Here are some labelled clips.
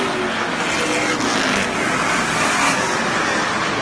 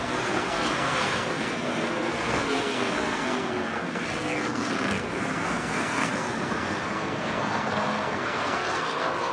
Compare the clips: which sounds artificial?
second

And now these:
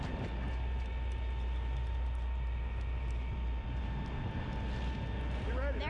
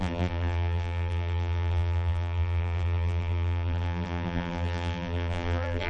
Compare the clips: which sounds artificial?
second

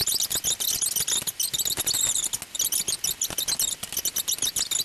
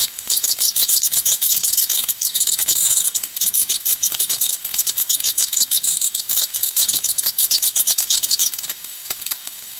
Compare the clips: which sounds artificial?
second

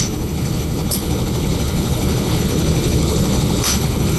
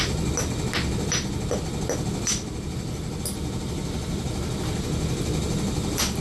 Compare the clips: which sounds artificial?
first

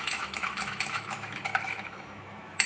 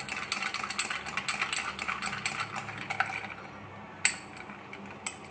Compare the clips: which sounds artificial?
first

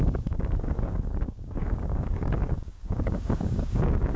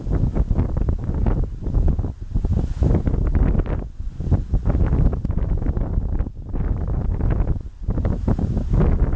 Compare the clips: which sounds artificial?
first